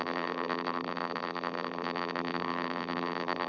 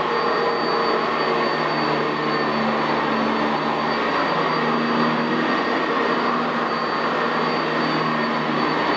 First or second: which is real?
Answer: second